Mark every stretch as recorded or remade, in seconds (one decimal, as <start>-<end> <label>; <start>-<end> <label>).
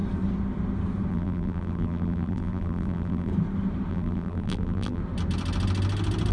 0.0-1.1 recorded; 1.1-3.3 remade; 3.3-3.9 recorded; 3.9-5.0 remade; 5.0-6.3 recorded